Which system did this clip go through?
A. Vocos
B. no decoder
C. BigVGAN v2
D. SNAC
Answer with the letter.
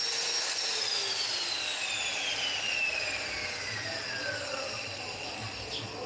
B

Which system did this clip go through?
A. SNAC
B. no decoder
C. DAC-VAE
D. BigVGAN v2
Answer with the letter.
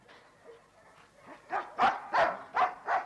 B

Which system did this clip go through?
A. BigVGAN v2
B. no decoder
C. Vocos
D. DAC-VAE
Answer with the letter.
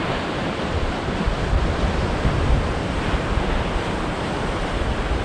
A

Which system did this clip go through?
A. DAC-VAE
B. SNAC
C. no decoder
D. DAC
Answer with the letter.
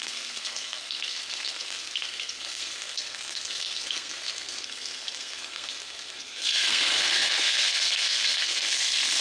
B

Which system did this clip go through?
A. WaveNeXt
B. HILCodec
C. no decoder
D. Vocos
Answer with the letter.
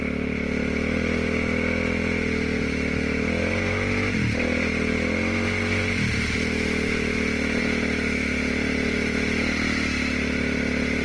C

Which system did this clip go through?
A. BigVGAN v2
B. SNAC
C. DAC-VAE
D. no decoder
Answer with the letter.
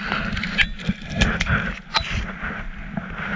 D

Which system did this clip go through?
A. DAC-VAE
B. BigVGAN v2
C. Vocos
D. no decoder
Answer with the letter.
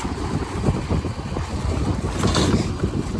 D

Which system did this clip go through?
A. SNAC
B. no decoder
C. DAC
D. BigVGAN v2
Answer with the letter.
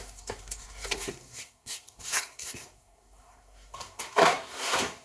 A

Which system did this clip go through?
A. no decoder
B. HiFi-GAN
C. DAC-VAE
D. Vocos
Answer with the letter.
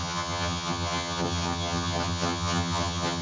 B